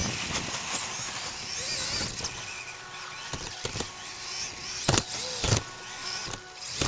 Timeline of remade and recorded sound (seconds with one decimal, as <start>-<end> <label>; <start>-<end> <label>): 0.0-6.9 recorded